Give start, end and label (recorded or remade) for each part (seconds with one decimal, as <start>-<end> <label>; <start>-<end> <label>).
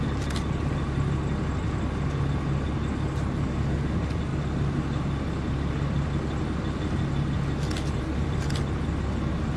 0.0-9.6 recorded